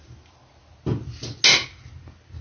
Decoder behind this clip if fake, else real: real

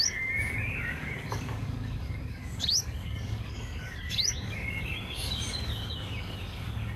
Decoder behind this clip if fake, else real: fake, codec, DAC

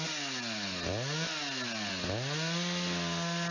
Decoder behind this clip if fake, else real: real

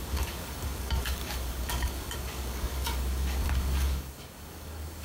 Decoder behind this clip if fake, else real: fake, codec, DAC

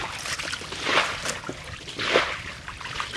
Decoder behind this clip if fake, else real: real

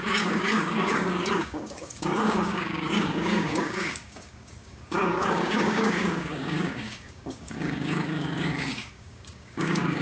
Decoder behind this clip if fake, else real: fake, codec, DAC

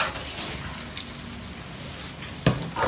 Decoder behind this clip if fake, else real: real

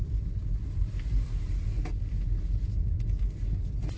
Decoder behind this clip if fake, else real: real